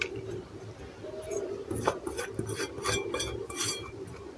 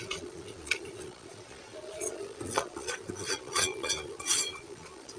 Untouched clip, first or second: first